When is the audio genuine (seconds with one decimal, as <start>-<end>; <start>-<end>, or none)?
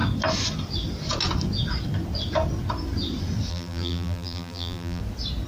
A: 0.0-3.5; 5.0-5.5